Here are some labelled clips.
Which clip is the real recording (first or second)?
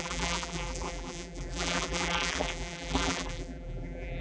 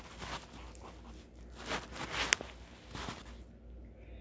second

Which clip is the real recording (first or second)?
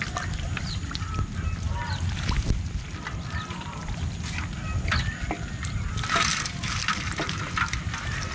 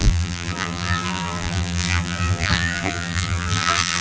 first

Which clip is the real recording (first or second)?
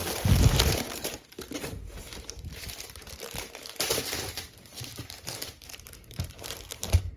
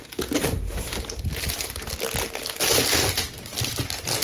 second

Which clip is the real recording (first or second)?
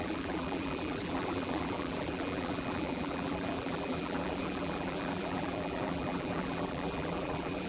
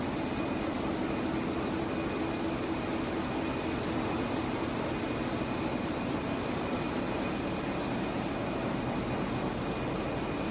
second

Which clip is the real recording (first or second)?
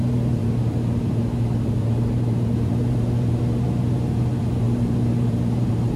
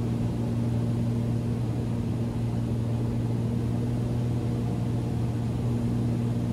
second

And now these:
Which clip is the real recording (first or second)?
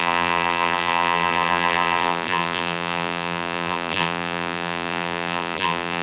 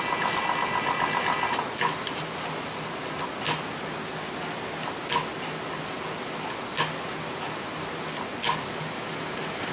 second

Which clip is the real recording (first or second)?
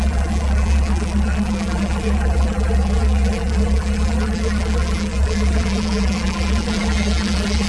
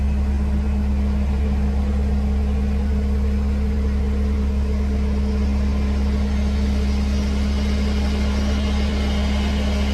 second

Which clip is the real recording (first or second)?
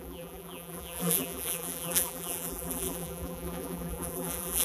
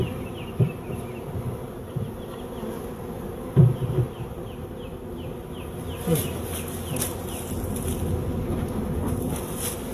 second